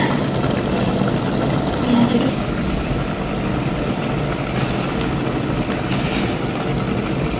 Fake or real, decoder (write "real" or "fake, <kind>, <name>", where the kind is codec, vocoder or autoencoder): real